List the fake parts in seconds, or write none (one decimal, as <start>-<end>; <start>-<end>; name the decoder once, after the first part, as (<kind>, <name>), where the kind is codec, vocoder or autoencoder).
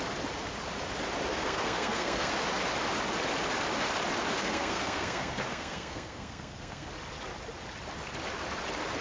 1.3-2.3 (codec, SNAC); 4.4-6.9